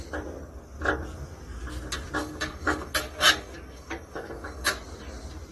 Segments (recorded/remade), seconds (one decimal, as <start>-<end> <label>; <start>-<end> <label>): 0.0-2.2 recorded; 2.2-4.7 remade; 4.7-5.5 recorded